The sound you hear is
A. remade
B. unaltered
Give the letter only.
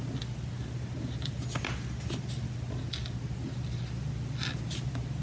B